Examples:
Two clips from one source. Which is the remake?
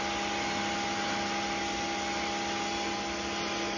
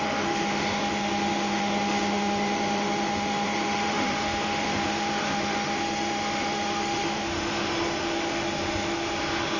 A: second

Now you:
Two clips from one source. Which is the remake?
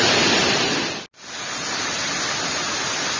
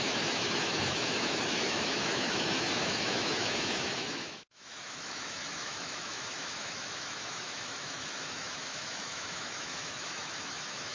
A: second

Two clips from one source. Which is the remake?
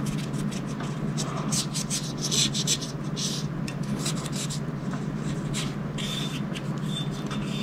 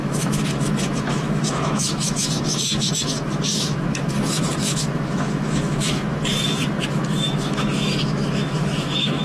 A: second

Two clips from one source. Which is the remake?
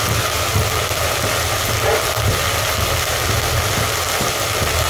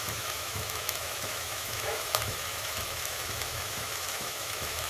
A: second